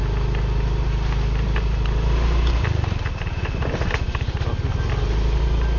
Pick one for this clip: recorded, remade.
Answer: recorded